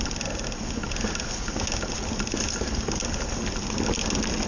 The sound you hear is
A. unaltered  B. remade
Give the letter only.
A